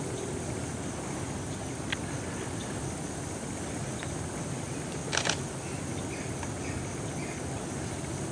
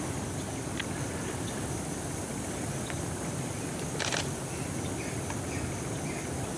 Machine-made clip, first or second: second